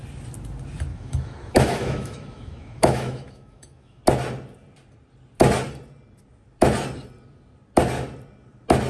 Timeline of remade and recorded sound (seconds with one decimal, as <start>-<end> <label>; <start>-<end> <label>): 0.0-0.9 recorded; 0.9-4.0 remade; 4.0-8.9 recorded